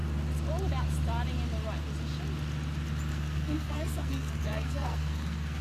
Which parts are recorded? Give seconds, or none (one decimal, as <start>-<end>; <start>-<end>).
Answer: 0.0-3.1